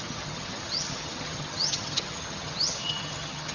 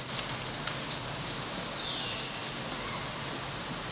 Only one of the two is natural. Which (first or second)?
second